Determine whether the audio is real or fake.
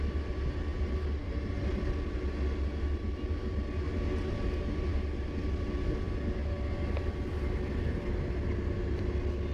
real